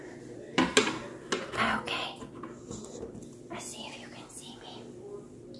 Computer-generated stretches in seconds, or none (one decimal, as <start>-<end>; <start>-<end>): none